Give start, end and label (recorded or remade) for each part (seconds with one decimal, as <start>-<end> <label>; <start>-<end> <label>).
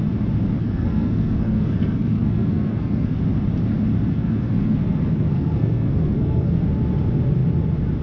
0.0-0.6 recorded; 0.6-3.2 remade; 3.2-4.1 recorded; 4.1-6.6 remade; 6.6-8.0 recorded